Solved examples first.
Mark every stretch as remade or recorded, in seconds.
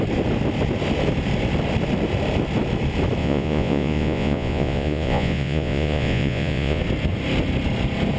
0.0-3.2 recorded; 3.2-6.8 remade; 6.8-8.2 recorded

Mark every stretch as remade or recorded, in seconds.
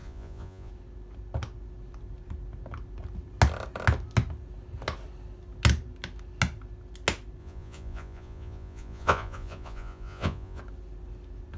0.0-0.7 remade; 0.7-7.4 recorded; 7.4-10.6 remade; 10.6-11.6 recorded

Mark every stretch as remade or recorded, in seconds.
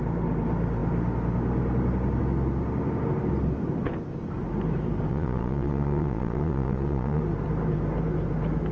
0.0-5.1 recorded; 5.1-7.2 remade; 7.2-8.7 recorded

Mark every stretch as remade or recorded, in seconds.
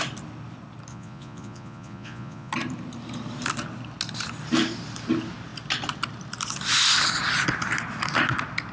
0.0-0.9 recorded; 0.9-2.5 remade; 2.5-8.7 recorded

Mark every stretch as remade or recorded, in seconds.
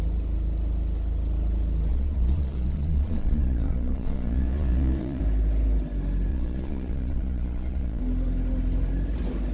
0.0-1.9 recorded; 1.9-5.2 remade; 5.2-6.3 recorded; 6.3-8.0 remade; 8.0-9.5 recorded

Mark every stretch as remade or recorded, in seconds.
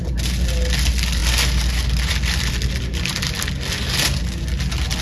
0.0-5.0 recorded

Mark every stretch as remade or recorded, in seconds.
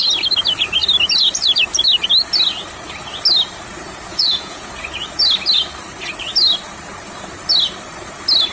0.0-4.1 recorded; 4.1-4.7 remade; 4.7-8.5 recorded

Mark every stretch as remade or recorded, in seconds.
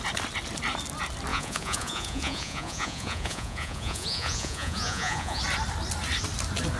0.0-1.3 recorded; 1.3-5.4 remade; 5.4-6.8 recorded